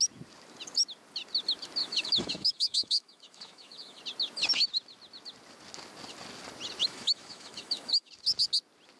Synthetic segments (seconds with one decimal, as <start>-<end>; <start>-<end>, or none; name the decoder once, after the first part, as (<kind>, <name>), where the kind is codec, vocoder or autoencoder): 1.8-4.0 (autoencoder, DAC-VAE); 6.8-8.1

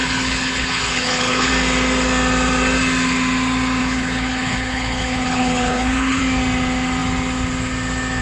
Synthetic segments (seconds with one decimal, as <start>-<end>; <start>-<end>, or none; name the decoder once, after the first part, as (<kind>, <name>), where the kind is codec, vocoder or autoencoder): 0.0-1.5 (codec, HILCodec); 3.8-6.2

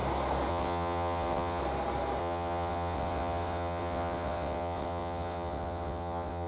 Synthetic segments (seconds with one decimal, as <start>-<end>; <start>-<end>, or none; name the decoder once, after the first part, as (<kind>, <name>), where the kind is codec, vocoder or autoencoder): 0.5-1.6 (vocoder, WaveNeXt); 2.2-6.5

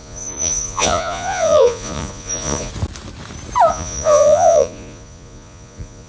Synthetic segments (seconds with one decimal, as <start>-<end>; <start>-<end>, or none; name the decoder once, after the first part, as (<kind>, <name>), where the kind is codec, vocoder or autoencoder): 0.0-2.7 (vocoder, Vocos); 3.7-6.1

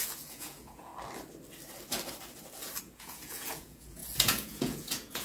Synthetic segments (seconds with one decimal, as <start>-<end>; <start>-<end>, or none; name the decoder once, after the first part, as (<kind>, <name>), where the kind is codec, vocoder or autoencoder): 0.0-0.9 (vocoder, Vocos); 2.8-5.2